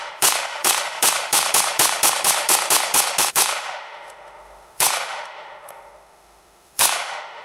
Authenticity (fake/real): fake